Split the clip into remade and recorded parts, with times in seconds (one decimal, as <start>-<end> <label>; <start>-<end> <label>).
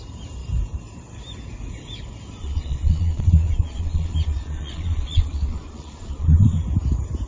0.0-2.4 recorded; 2.4-6.6 remade; 6.6-7.3 recorded